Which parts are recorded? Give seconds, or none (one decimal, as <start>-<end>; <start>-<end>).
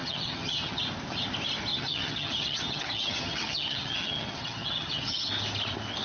0.8-1.7; 5.3-6.0